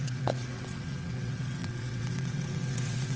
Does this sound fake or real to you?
fake